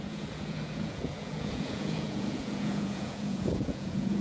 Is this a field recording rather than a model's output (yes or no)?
no